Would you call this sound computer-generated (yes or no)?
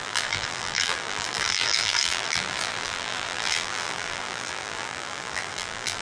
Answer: yes